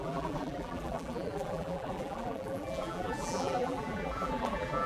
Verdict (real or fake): fake